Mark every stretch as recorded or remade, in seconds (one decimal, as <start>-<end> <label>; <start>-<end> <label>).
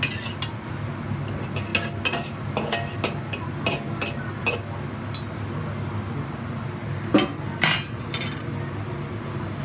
0.0-9.6 recorded